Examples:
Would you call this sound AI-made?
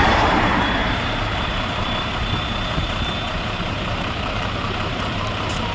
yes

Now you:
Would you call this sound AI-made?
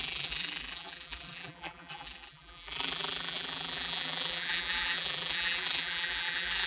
yes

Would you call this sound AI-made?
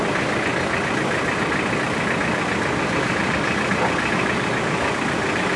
no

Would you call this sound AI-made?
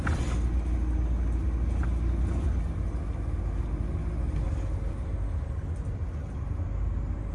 no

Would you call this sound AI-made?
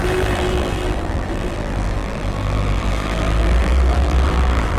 yes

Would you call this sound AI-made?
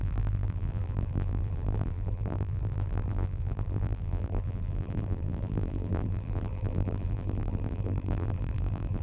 yes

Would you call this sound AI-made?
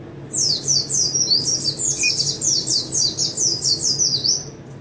no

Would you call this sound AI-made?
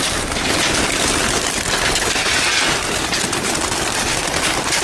no